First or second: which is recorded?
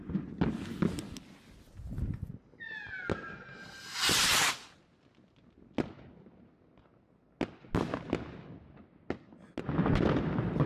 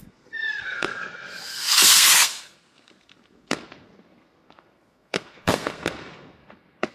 first